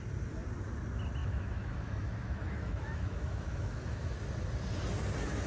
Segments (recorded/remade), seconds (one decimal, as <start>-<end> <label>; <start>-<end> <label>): 0.0-1.2 recorded; 1.2-4.2 remade; 4.2-5.5 recorded